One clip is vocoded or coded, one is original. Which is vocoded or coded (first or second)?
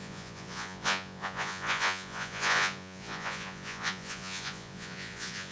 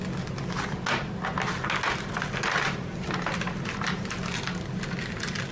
first